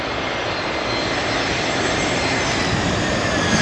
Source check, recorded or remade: recorded